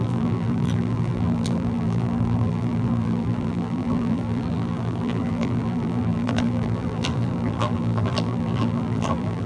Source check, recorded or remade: remade